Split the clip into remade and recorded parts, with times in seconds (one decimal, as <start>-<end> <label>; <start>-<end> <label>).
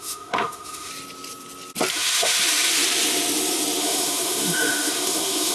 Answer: 0.0-0.9 remade; 0.9-1.9 recorded; 1.9-2.7 remade; 2.7-3.8 recorded; 3.8-5.5 remade